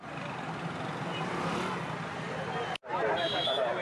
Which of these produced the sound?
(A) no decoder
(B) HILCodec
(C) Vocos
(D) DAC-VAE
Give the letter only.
A